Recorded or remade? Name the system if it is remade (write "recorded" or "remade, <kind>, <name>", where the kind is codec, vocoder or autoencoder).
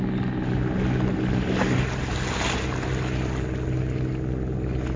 recorded